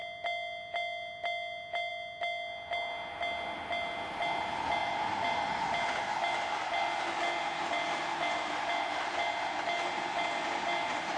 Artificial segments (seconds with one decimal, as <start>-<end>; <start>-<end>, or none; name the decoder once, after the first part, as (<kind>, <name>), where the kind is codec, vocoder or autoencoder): none